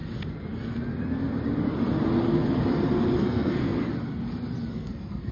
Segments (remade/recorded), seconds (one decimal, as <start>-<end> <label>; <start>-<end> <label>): 0.0-3.2 recorded; 3.2-3.8 remade; 3.8-4.7 recorded; 4.7-5.3 remade

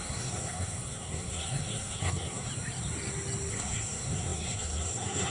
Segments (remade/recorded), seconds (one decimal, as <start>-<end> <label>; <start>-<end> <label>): 0.0-2.5 remade; 2.5-3.5 recorded; 3.5-5.3 remade

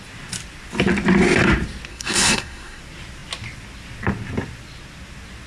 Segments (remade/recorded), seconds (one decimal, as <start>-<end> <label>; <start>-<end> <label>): 0.0-1.9 recorded; 1.9-2.8 remade; 2.8-5.5 recorded

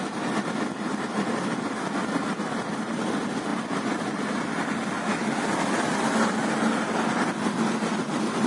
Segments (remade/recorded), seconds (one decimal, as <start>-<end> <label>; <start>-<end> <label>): 0.0-8.5 recorded